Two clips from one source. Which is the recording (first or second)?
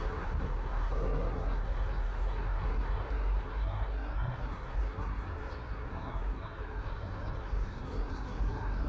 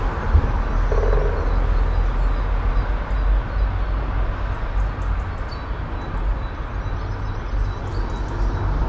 second